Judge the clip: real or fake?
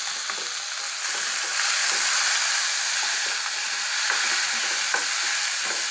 real